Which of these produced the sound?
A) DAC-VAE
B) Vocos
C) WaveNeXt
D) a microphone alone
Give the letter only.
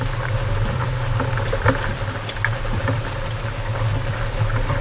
D